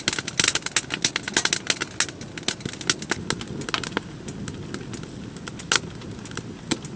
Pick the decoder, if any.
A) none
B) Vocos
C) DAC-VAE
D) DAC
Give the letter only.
A